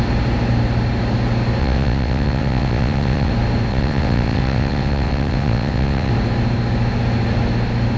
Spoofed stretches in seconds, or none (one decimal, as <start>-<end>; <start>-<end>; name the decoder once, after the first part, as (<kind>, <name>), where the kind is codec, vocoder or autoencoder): 1.6-3.3 (vocoder, WaveNeXt); 3.7-6.1